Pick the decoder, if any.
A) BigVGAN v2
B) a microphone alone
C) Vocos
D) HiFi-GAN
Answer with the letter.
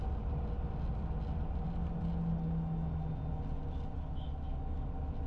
B